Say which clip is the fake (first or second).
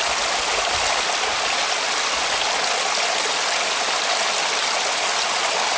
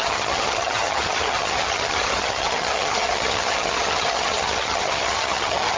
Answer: second